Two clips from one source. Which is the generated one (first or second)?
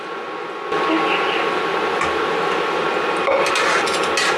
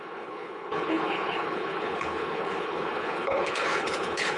second